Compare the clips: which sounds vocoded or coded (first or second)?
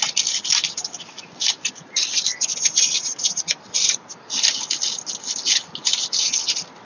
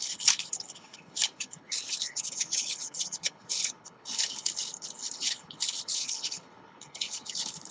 second